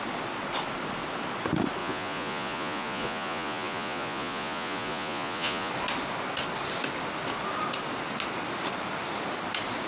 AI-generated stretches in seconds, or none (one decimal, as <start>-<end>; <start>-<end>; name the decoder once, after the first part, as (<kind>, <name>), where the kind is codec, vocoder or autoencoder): 1.8-5.7 (vocoder, Vocos)